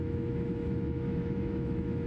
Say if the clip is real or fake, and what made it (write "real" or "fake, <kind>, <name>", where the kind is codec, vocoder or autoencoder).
fake, autoencoder, DAC-VAE